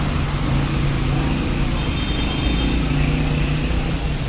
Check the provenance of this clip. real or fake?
real